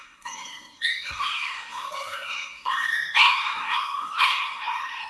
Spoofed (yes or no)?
yes